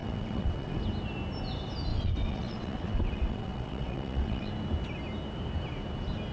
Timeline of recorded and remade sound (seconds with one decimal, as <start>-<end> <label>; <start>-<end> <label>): 0.0-0.8 remade; 0.8-1.9 recorded; 1.9-4.5 remade; 4.5-6.3 recorded